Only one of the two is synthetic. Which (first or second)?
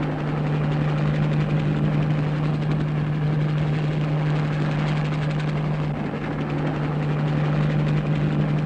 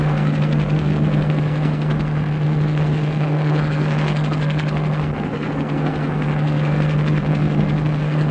second